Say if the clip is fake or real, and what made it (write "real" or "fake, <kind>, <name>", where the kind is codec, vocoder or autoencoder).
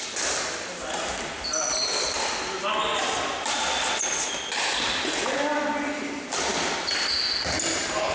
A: real